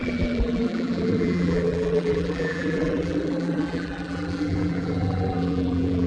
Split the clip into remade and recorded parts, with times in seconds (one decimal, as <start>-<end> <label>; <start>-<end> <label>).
0.0-6.1 remade